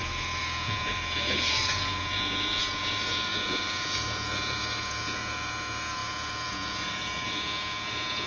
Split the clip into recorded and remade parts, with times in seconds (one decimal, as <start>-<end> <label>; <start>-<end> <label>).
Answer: 0.0-8.3 remade